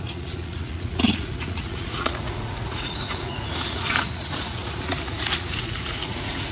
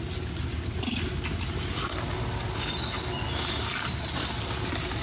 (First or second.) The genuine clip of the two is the second